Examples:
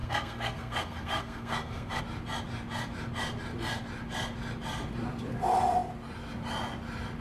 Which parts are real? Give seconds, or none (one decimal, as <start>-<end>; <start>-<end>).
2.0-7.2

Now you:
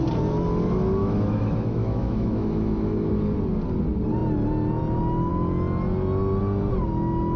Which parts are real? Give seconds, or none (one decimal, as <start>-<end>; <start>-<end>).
0.0-1.0; 3.1-7.4

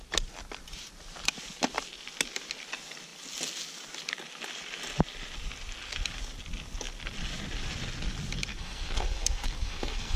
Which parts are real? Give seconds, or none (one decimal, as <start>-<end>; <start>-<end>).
0.0-8.5

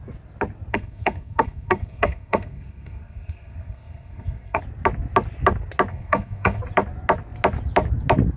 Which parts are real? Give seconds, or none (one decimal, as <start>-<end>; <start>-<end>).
0.0-0.7; 4.6-5.9; 6.6-8.4

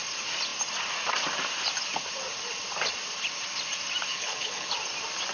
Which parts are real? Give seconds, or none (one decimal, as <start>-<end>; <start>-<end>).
0.0-4.1; 4.7-5.3